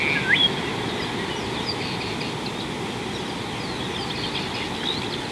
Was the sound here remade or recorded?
recorded